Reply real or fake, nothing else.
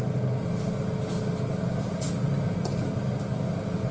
real